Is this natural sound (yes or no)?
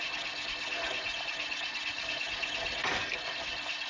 yes